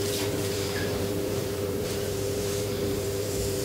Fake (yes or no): yes